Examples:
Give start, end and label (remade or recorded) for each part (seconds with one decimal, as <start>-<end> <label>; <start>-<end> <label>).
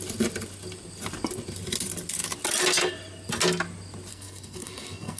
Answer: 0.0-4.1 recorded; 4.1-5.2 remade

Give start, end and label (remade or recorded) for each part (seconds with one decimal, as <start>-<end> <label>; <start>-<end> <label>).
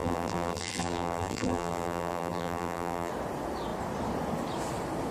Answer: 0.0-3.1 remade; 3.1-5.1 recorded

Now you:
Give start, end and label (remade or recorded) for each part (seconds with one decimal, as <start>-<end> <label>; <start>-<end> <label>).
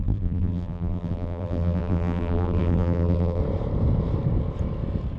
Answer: 0.0-3.4 remade; 3.4-5.2 recorded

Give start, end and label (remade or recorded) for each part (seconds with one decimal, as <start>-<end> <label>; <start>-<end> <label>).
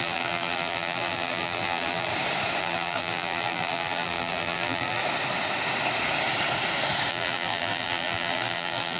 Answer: 0.0-2.1 remade; 2.1-2.6 recorded; 2.6-5.0 remade; 5.0-7.1 recorded; 7.1-9.0 remade